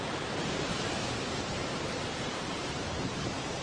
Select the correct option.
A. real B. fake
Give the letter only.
B